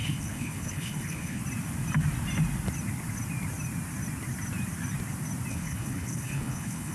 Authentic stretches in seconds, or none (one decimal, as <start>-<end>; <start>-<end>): 1.4-5.5